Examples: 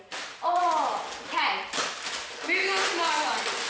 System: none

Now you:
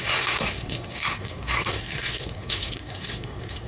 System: codec, SNAC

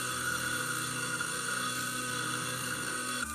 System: codec, SNAC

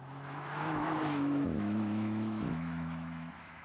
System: autoencoder, DAC-VAE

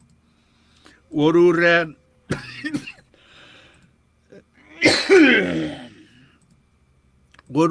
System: none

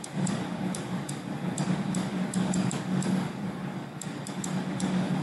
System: codec, DAC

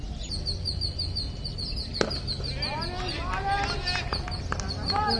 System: none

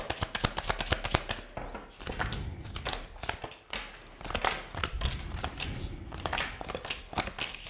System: none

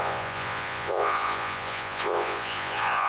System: vocoder, Vocos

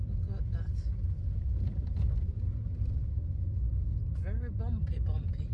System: none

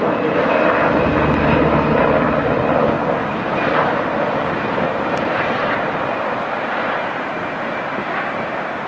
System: none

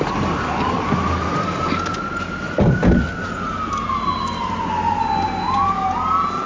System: none